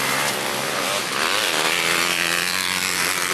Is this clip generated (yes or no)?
yes